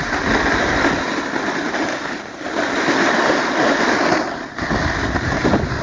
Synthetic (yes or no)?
yes